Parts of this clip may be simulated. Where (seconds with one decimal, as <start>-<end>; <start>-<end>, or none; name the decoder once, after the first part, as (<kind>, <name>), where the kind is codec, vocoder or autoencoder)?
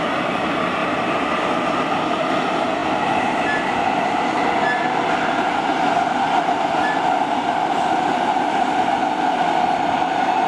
none